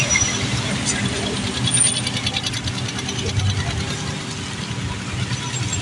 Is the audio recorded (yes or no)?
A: yes